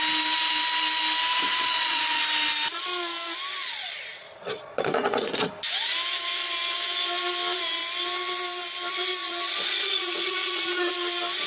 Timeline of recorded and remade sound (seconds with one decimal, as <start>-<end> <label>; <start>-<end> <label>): 0.0-1.3 recorded; 1.3-2.2 remade; 2.2-3.6 recorded; 3.6-5.5 remade; 5.5-9.2 recorded; 9.2-10.9 remade; 10.9-11.5 recorded